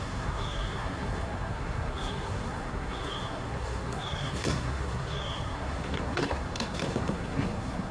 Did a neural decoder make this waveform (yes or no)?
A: yes